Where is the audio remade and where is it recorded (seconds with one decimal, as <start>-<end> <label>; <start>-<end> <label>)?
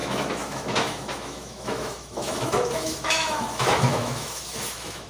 0.0-5.1 remade